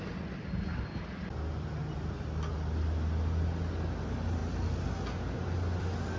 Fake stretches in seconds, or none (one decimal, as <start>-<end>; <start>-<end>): none

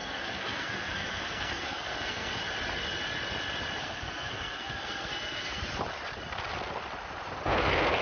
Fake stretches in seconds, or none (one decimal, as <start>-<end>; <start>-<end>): 0.0-2.4; 3.8-5.6

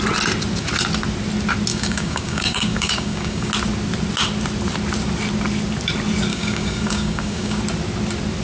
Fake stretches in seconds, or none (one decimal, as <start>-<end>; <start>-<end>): 1.7-3.5; 6.3-7.6

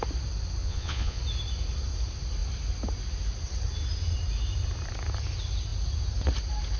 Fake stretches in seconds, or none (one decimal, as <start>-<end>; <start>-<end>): 0.6-1.2